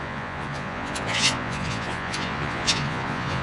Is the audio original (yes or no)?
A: no